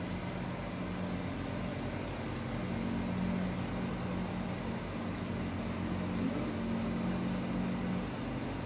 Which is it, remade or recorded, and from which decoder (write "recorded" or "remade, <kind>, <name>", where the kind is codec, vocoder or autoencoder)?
recorded